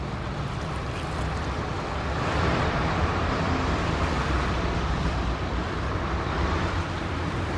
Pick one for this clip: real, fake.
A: fake